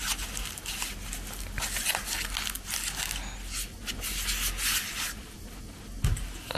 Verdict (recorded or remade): recorded